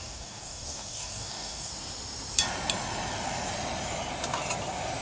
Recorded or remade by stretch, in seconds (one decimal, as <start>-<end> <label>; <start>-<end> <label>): 0.0-1.7 remade; 1.7-5.0 recorded